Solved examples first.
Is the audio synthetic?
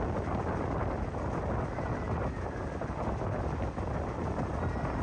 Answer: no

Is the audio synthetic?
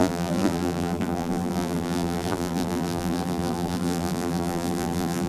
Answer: yes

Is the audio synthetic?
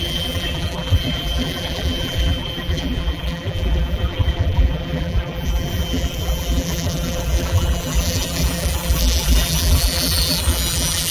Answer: yes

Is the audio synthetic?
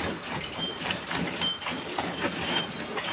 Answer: yes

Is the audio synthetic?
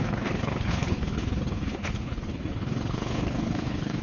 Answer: yes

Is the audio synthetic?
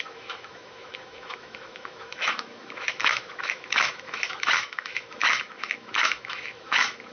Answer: yes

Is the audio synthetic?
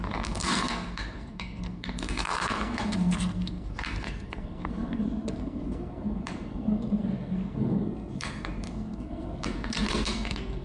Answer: yes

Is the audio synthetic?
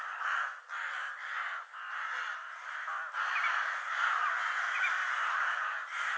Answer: no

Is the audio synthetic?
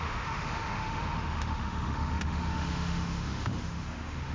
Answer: yes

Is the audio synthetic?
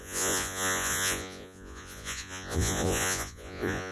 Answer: yes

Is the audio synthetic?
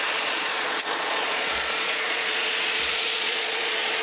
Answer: yes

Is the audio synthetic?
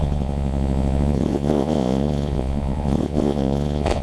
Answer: yes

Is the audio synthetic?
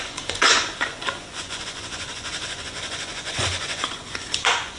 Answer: yes